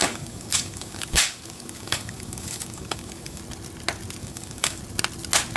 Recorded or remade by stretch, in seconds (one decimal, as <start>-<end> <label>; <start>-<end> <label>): 0.0-3.4 remade; 3.4-4.2 recorded; 4.2-4.8 remade; 4.8-5.6 recorded

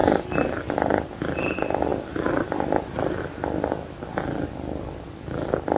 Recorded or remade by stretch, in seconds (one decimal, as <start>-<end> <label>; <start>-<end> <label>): 0.0-5.8 recorded

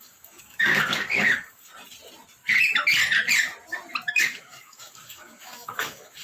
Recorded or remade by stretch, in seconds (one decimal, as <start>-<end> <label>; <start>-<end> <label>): 0.0-1.7 remade; 1.7-4.1 recorded; 4.1-6.2 remade

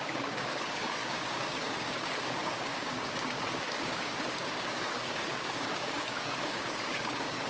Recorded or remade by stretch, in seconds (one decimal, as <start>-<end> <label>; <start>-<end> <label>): 0.0-7.5 remade

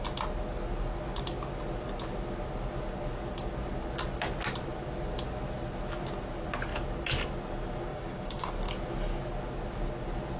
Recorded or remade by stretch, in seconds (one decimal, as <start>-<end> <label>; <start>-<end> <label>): 0.0-7.9 recorded; 7.9-8.5 remade; 8.5-10.4 recorded